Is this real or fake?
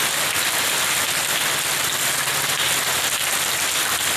real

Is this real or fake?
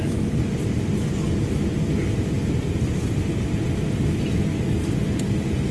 real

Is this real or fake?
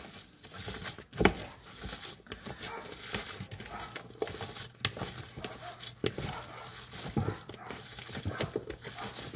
real